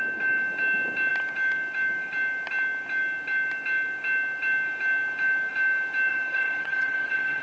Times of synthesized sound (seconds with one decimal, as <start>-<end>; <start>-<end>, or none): 6.1-7.4